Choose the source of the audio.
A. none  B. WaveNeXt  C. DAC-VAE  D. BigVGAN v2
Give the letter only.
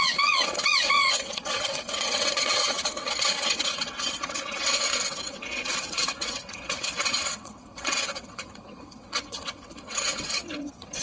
B